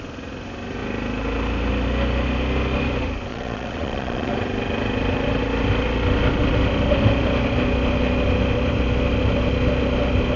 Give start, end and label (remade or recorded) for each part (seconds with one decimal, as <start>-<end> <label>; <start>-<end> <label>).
0.0-3.3 recorded; 3.3-4.3 remade; 4.3-10.4 recorded